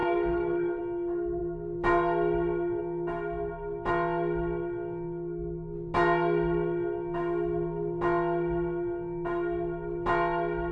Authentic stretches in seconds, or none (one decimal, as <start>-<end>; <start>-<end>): 0.8-10.7